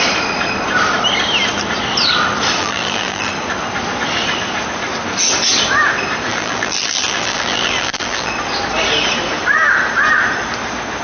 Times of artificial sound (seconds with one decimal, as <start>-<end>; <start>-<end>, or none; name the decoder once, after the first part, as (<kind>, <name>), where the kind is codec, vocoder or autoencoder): 2.6-3.3 (vocoder, BigVGAN v2); 6.3-8.3